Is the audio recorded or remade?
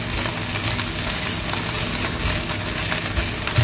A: recorded